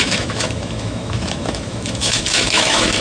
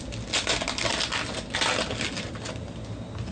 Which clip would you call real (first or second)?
second